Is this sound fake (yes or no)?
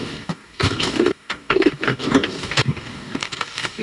yes